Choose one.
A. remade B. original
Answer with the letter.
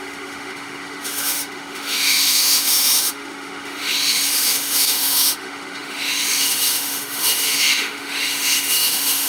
A